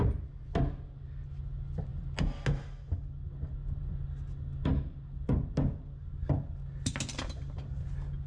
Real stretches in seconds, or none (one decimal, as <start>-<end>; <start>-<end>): 0.0-8.3